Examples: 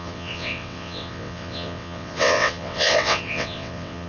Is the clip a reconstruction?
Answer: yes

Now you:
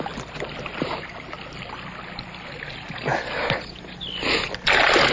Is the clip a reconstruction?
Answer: no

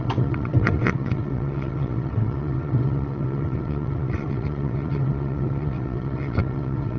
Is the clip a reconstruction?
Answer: yes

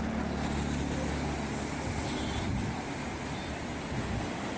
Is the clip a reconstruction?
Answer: no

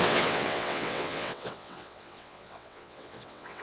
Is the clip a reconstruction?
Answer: yes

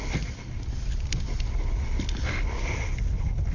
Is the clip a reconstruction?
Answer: no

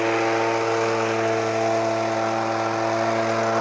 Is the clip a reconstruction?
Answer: no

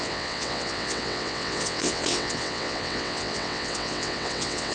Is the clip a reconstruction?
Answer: yes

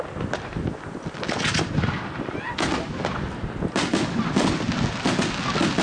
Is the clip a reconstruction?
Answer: no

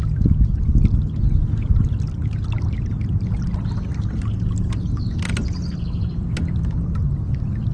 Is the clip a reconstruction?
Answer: no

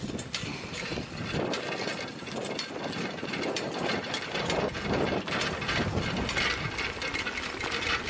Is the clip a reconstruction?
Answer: no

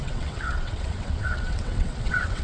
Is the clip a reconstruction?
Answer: yes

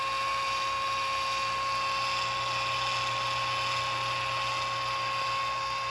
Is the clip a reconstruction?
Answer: no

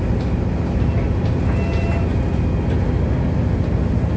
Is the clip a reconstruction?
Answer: no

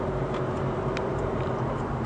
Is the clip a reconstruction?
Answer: no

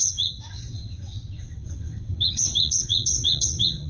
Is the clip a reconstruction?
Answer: yes